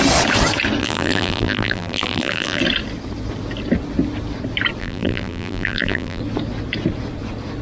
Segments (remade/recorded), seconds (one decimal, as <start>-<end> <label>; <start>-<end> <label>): 0.0-0.8 recorded; 0.8-2.6 remade; 2.6-4.8 recorded; 4.8-6.2 remade; 6.2-7.6 recorded